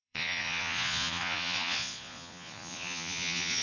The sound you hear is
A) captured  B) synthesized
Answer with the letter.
B